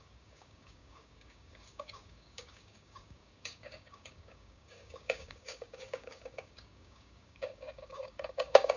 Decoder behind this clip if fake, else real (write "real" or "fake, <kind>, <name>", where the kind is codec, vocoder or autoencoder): fake, codec, DAC